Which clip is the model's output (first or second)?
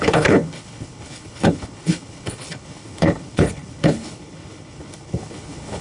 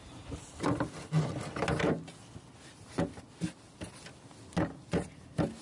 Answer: first